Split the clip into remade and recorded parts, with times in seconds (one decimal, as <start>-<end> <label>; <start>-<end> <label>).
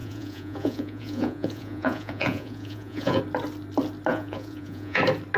0.0-3.2 remade; 3.2-4.1 recorded; 4.1-5.0 remade; 5.0-5.4 recorded